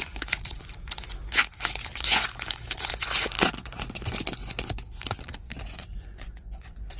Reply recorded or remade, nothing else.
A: remade